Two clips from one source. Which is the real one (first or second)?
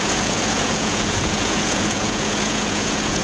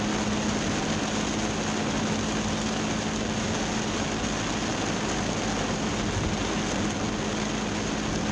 second